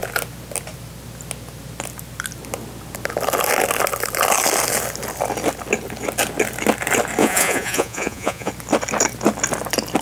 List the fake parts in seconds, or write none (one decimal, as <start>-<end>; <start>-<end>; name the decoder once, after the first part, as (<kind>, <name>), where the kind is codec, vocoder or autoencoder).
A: 7.2-8.5 (vocoder, Vocos)